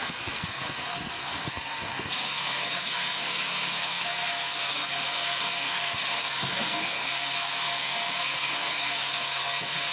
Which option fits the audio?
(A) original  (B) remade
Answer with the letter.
B